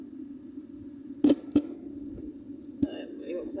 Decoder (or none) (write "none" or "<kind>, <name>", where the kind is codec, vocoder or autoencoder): none